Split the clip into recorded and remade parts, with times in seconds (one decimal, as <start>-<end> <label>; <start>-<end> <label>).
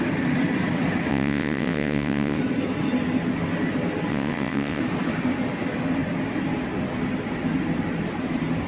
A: 0.0-1.1 recorded; 1.1-2.4 remade; 2.4-4.1 recorded; 4.1-4.8 remade; 4.8-8.7 recorded